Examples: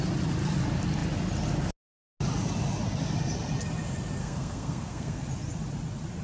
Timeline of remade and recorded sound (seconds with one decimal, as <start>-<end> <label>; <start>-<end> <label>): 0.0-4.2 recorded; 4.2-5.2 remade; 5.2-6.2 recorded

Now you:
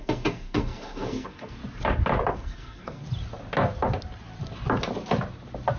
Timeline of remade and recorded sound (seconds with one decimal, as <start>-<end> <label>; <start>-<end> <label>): 0.0-1.6 remade; 1.6-2.3 recorded; 2.3-3.0 remade; 3.0-5.8 recorded

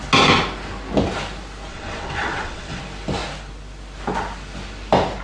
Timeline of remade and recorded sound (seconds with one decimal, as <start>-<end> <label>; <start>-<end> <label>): 0.0-1.7 recorded; 1.7-2.8 remade; 2.8-5.2 recorded

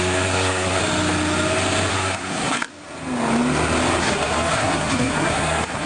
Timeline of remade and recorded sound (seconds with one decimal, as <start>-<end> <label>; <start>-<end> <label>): 0.0-0.8 remade; 0.8-1.9 recorded; 1.9-2.7 remade; 2.7-4.0 recorded; 4.0-5.9 remade

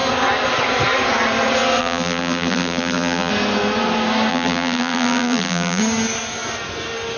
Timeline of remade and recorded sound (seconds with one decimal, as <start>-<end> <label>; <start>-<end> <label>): 0.0-1.8 recorded; 1.8-3.3 remade; 3.3-4.3 recorded; 4.3-5.8 remade; 5.8-7.2 recorded

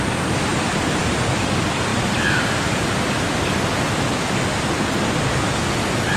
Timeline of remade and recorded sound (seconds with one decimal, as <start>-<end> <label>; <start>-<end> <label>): 0.0-0.5 recorded; 0.5-1.1 remade; 1.1-6.2 recorded

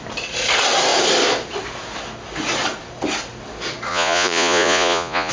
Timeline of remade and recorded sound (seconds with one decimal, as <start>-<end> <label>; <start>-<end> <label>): 0.0-3.9 recorded; 3.9-5.3 remade

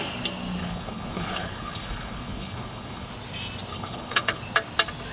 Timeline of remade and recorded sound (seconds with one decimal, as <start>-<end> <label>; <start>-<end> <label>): 0.0-0.6 recorded; 0.6-3.1 remade; 3.1-3.7 recorded; 3.7-4.4 remade; 4.4-5.1 recorded